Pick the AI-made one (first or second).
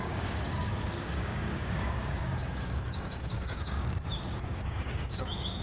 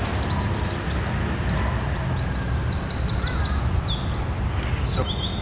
first